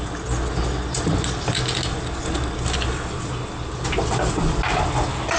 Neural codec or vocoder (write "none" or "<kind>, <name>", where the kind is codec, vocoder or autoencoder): none